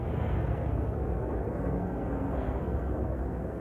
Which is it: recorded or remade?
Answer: remade